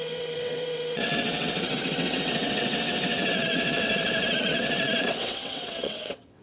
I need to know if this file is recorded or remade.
remade